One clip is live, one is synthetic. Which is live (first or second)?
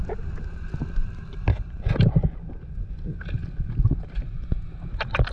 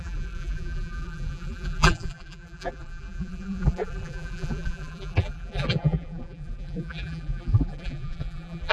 first